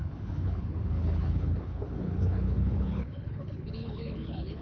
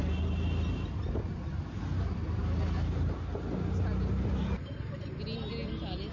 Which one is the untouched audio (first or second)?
second